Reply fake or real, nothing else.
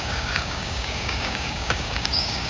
fake